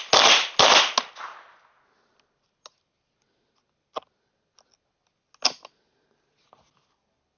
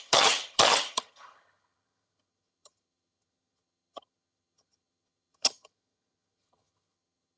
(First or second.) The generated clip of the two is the second